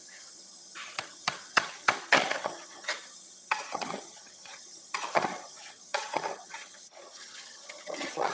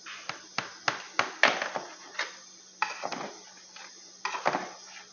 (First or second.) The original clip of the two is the second